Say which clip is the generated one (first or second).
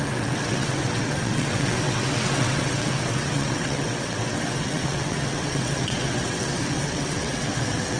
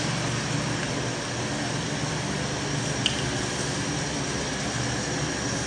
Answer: first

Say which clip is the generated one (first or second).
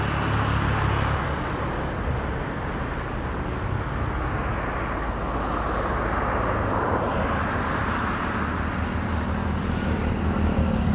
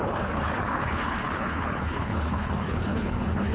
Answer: second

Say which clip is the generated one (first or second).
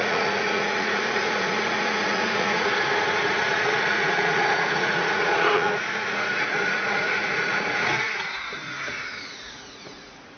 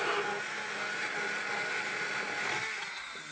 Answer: first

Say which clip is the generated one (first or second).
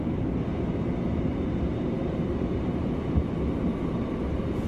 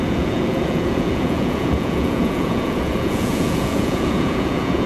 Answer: second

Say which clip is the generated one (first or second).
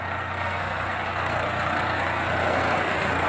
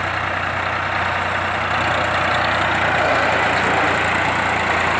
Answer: first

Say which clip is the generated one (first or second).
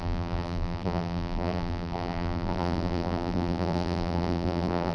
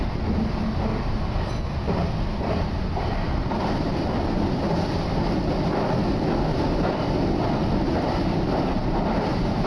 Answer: first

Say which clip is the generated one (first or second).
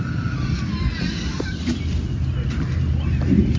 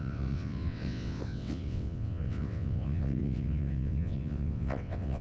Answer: second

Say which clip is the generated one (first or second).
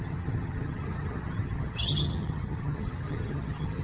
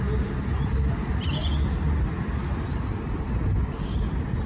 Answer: first